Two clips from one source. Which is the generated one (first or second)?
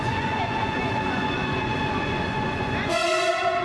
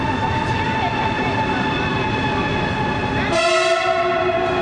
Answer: first